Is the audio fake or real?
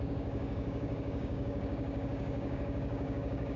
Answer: fake